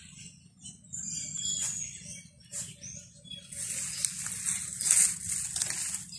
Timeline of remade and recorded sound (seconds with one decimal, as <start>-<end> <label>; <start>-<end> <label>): 0.0-6.2 recorded